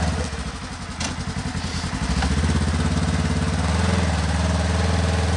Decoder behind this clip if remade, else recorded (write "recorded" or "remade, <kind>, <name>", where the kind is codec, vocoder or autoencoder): recorded